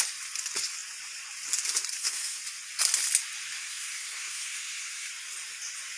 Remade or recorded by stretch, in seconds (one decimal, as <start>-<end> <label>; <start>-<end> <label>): 0.0-1.9 recorded; 1.9-2.4 remade; 2.4-3.6 recorded; 3.6-5.1 remade; 5.1-6.0 recorded